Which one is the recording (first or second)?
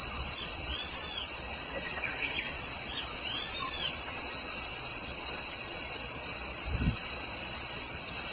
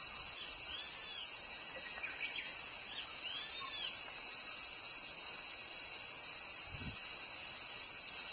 second